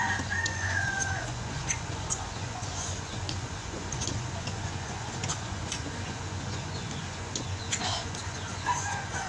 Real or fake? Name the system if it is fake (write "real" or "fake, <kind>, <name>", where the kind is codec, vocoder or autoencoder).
fake, vocoder, Vocos